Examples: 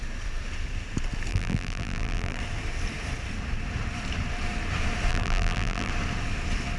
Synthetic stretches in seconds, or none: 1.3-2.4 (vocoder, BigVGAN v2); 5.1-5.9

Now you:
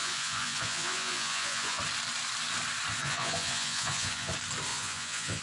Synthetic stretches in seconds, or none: 0.0-1.8 (vocoder, Vocos); 3.0-4.3; 4.7-5.4

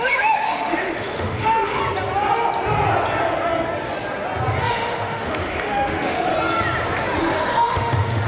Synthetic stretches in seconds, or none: 0.0-1.8 (autoencoder, DAC-VAE); 4.7-6.3; 7.2-8.3

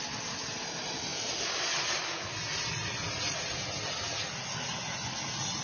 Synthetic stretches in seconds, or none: none

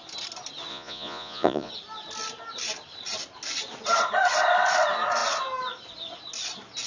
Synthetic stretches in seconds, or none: 0.7-1.7 (vocoder, Vocos)

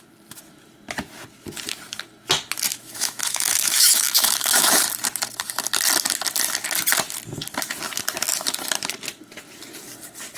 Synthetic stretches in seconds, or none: 2.7-4.8 (autoencoder, DAC-VAE)

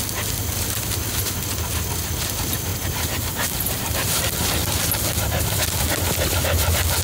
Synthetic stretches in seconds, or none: 2.7-4.2 (vocoder, BigVGAN v2)